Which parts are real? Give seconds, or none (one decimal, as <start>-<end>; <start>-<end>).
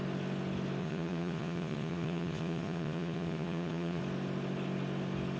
0.0-0.8; 4.0-5.4